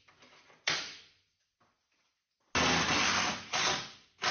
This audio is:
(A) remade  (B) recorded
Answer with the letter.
B